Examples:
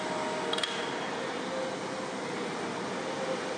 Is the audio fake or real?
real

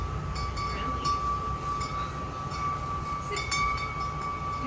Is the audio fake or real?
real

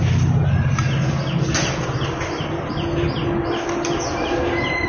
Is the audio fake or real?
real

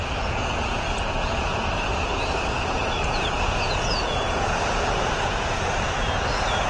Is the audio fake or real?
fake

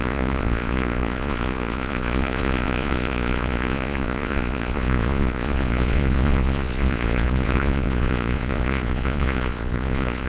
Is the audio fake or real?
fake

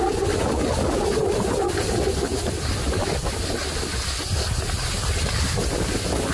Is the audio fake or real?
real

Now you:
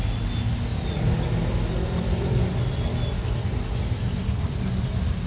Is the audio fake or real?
real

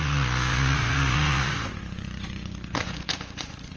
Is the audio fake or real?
fake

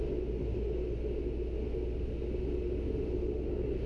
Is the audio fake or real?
real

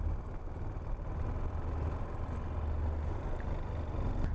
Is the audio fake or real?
real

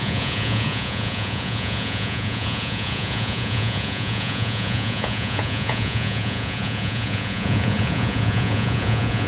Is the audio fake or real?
fake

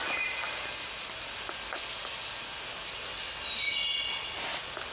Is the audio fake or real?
real